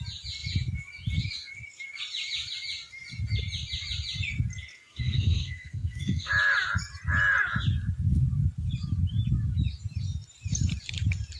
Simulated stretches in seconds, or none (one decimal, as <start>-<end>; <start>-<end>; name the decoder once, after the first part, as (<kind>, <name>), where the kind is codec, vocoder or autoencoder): 4.7-6.3 (codec, SNAC)